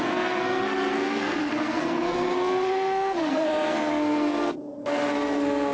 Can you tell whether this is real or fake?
fake